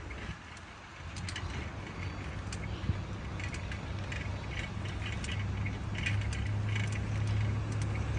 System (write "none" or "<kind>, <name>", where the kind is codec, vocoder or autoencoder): none